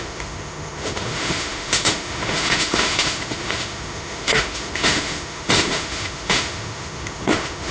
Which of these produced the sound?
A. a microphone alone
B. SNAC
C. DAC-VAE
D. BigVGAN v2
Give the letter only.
C